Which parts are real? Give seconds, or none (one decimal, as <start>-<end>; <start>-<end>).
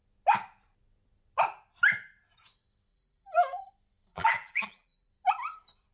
0.0-2.9; 3.6-4.1; 5.1-5.9